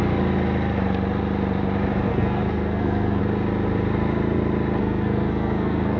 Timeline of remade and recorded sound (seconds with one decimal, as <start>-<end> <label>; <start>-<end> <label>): 0.0-2.1 recorded; 2.1-3.2 remade; 3.2-4.8 recorded; 4.8-6.0 remade